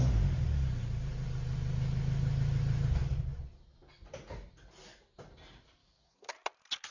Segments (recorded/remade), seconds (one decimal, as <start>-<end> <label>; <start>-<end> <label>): 0.0-5.8 recorded; 5.8-6.3 remade; 6.3-6.9 recorded